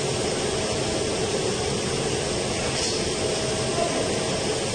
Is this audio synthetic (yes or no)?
no